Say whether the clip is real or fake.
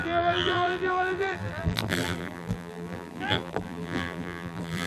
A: fake